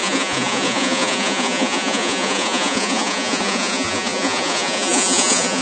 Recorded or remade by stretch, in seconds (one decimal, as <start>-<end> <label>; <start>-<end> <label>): 0.0-5.6 remade